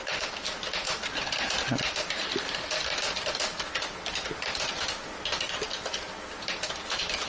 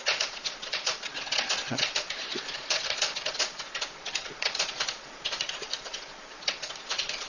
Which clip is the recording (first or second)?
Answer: first